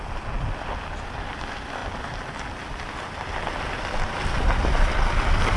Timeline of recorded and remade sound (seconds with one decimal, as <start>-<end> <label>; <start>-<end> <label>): 0.0-5.6 recorded